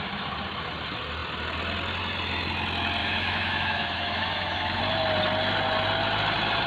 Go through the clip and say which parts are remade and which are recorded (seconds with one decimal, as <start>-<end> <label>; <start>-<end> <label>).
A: 0.0-3.0 recorded; 3.0-4.8 remade; 4.8-6.7 recorded